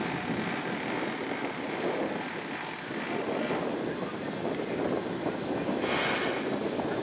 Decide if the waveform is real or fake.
real